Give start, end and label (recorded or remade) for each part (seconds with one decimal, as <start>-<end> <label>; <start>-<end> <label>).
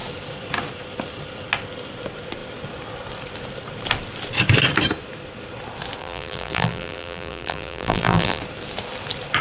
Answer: 0.0-6.0 recorded; 6.0-8.4 remade; 8.4-9.4 recorded